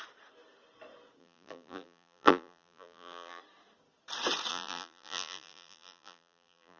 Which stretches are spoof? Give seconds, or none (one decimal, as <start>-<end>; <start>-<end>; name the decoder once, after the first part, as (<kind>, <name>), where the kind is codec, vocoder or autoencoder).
1.2-3.4 (vocoder, BigVGAN v2); 4.5-6.8